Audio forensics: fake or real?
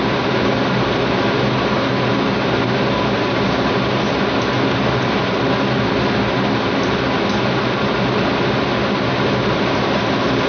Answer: real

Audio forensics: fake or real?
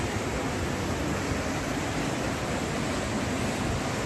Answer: real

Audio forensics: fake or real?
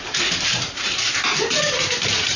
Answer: fake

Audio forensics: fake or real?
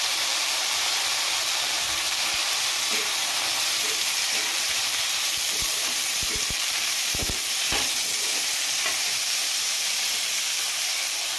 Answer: fake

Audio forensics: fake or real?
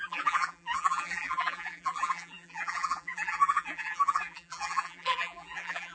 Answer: fake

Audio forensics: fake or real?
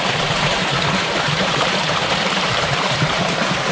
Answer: fake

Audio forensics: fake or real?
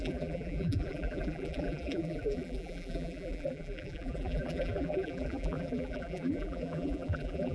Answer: fake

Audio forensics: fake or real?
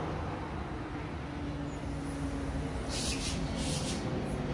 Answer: real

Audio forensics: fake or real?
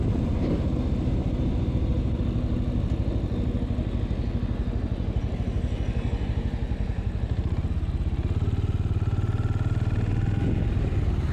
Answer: real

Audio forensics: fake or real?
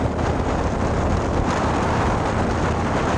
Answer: fake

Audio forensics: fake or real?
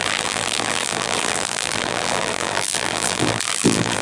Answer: fake